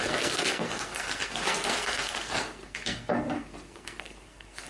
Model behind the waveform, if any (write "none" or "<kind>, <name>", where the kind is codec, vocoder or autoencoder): codec, SNAC